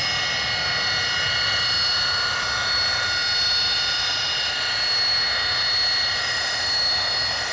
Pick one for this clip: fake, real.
real